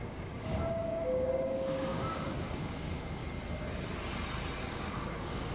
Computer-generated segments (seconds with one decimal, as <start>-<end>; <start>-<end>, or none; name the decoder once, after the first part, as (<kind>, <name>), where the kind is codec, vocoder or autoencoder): 0.0-3.2 (codec, DAC); 4.7-5.5